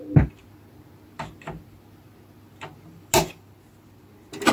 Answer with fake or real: real